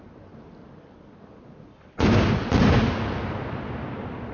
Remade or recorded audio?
recorded